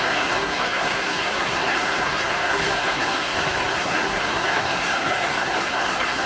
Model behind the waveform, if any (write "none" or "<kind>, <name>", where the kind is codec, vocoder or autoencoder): codec, SNAC